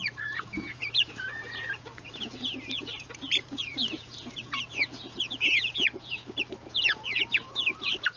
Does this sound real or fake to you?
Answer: fake